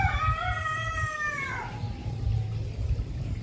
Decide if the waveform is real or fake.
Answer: real